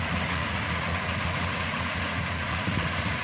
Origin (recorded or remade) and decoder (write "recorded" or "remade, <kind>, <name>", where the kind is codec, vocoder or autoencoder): remade, vocoder, Vocos